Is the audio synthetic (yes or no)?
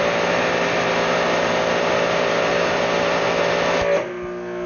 no